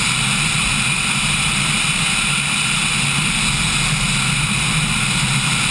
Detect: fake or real real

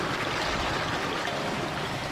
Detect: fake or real real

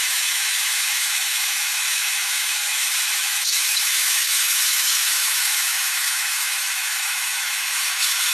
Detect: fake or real fake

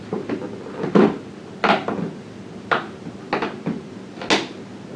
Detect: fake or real real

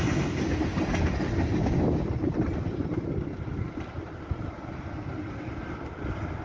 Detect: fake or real real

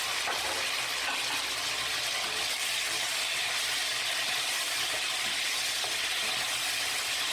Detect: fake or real real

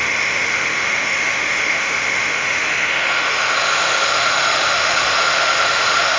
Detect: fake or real fake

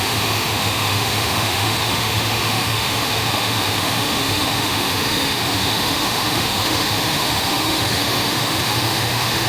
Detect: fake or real fake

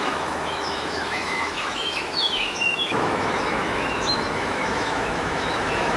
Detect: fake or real fake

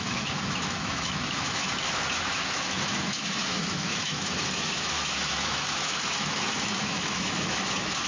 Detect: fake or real fake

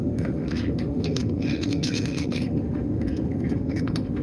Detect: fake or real fake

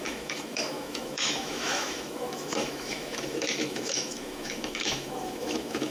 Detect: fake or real fake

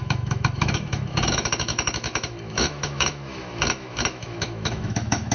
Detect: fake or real fake